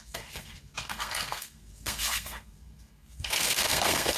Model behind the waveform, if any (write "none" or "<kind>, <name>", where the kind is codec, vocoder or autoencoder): codec, SNAC